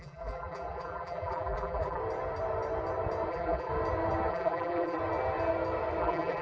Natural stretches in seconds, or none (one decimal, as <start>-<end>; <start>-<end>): 2.0-3.3; 3.7-4.3; 5.0-6.0